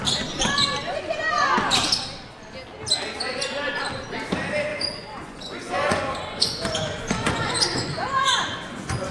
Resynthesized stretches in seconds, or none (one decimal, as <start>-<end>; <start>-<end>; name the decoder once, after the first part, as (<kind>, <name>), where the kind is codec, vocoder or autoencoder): 4.7-9.1 (vocoder, Vocos)